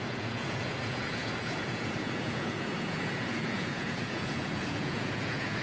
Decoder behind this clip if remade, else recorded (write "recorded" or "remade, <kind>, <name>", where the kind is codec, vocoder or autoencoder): remade, vocoder, Vocos